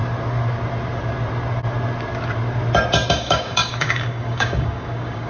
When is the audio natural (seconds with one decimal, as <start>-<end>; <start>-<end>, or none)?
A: 0.0-3.1